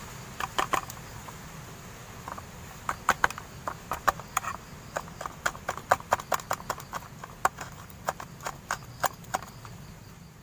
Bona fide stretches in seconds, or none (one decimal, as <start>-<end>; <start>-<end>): 0.0-7.5; 8.0-10.4